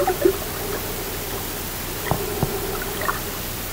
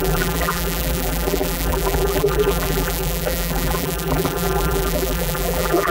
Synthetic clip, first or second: second